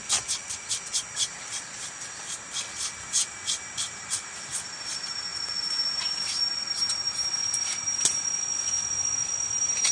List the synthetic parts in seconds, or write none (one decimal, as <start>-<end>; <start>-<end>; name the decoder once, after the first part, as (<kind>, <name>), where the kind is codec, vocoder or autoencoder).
none